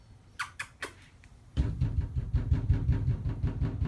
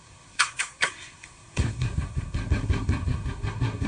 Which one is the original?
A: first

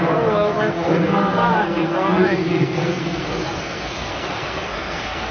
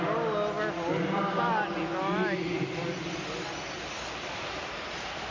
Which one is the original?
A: second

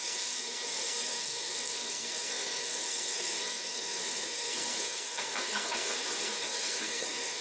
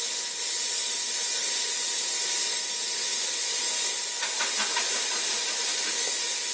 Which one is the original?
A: second